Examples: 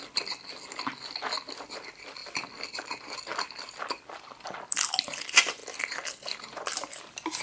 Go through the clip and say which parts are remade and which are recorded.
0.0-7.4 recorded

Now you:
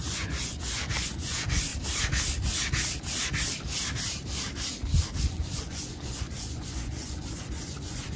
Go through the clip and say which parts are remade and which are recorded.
0.0-1.7 remade; 1.7-5.2 recorded; 5.2-8.2 remade

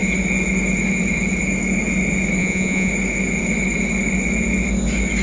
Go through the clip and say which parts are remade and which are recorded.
0.0-2.4 recorded; 2.4-2.9 remade; 2.9-5.2 recorded

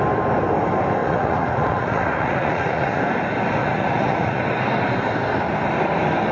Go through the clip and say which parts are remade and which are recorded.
0.0-1.0 recorded; 1.0-3.0 remade; 3.0-3.6 recorded; 3.6-4.4 remade; 4.4-6.3 recorded

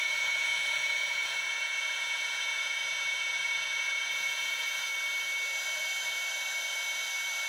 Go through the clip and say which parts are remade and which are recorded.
0.0-4.9 remade; 4.9-7.5 recorded